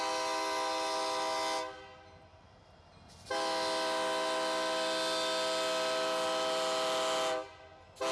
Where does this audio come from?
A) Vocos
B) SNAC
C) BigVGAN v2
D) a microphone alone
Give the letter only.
D